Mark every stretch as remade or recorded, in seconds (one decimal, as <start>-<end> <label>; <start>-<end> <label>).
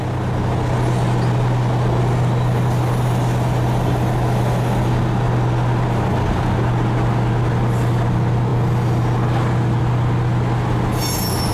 0.0-11.5 recorded